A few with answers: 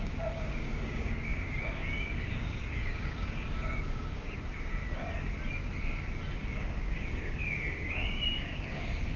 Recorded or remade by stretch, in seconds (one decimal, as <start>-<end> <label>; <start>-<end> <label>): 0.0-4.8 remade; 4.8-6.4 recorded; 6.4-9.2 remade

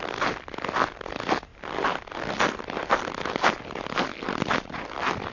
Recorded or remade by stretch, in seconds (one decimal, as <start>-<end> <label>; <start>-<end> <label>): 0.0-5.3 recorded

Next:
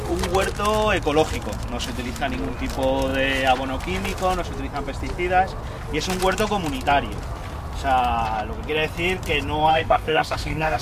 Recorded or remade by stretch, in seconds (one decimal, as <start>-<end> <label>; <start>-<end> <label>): 0.0-9.7 recorded; 9.7-10.8 remade

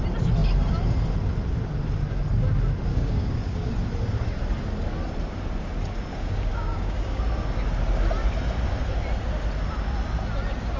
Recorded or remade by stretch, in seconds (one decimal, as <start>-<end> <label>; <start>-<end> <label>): 0.0-2.9 recorded; 2.9-3.7 remade; 3.7-6.1 recorded; 6.1-7.2 remade; 7.2-10.8 recorded

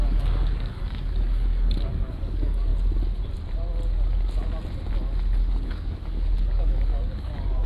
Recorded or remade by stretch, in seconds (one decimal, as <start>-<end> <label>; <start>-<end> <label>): 0.0-2.7 remade; 2.7-5.5 recorded; 5.5-7.7 remade